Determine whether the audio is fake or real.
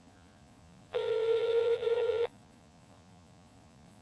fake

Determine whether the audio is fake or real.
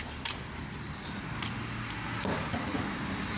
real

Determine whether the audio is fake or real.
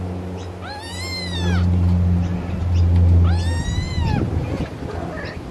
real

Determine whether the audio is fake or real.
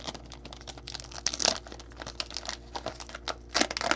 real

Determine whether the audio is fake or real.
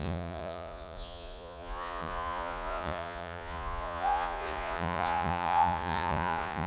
fake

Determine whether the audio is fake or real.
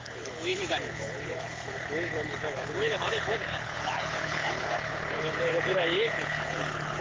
fake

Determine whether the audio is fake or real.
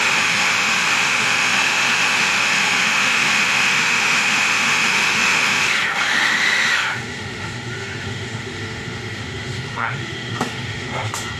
fake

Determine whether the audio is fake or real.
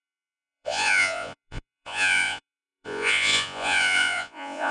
fake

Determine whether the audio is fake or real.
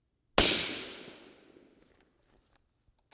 real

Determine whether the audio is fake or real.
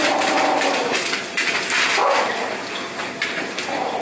real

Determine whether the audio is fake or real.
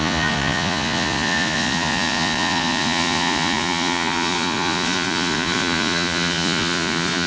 fake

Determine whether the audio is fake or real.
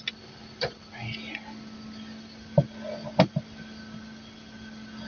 real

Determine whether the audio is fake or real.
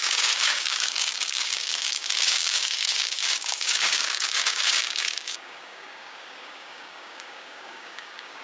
fake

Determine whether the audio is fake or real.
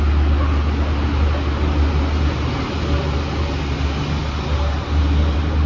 real